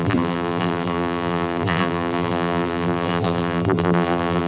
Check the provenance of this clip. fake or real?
fake